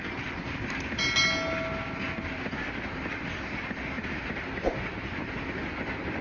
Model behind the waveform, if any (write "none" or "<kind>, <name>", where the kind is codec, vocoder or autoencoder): none